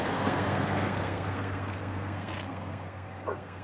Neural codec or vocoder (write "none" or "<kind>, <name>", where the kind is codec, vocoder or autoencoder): codec, SNAC